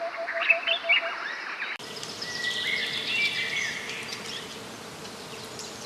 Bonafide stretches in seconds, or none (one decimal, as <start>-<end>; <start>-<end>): 0.0-5.9